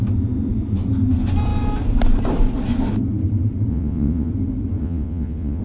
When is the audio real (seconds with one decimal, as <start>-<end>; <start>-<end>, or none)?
0.0-3.7; 4.3-4.8